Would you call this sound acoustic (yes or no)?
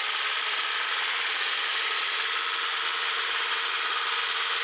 yes